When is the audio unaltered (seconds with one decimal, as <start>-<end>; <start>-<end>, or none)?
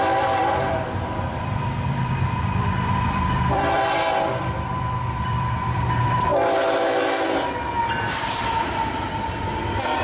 6.3-8.1